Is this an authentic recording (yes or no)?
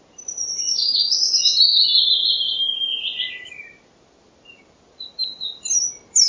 yes